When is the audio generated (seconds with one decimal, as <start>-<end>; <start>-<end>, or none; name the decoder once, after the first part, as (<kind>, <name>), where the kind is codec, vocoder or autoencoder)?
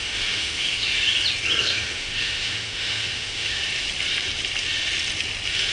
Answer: 0.0-0.9 (autoencoder, DAC-VAE); 1.6-3.6